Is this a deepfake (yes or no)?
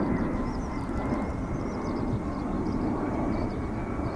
no